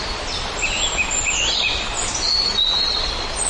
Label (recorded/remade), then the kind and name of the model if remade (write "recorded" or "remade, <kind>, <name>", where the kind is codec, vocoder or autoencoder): recorded